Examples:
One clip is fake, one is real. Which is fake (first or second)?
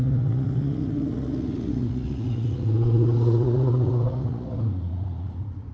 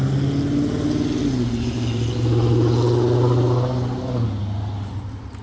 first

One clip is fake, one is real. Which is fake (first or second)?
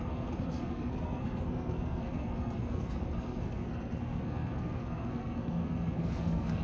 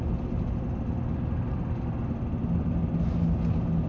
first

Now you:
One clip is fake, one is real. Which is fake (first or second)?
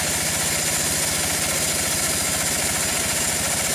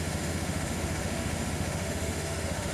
second